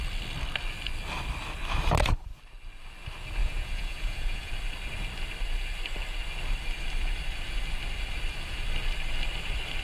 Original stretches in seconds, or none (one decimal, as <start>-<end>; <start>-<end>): 0.0-3.4; 4.5-9.8